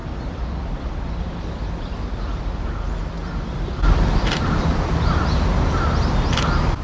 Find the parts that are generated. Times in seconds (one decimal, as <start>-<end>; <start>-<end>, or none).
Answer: 0.0-2.4; 3.2-4.9